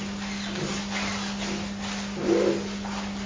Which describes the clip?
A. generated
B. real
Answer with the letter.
B